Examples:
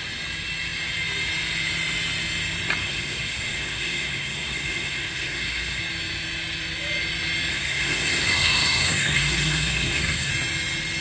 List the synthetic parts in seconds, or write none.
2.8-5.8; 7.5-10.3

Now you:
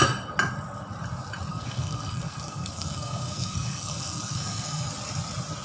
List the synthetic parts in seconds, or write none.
1.5-4.9

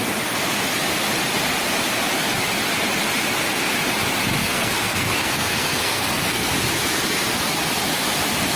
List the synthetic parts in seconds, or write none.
4.4-6.5

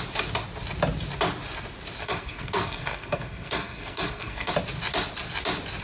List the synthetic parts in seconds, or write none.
2.0-4.5

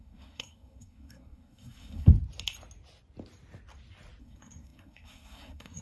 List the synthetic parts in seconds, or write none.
0.0-2.1; 4.2-5.8

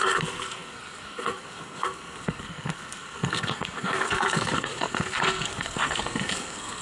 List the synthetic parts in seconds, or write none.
0.0-6.8

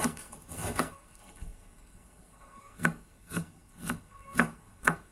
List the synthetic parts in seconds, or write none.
0.0-5.1

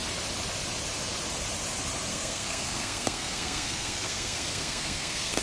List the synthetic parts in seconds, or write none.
2.1-5.4